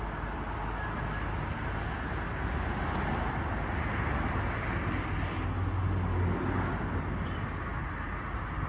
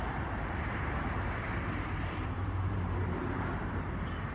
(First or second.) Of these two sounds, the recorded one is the first